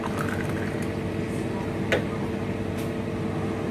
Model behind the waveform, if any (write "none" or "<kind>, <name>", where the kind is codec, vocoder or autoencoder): none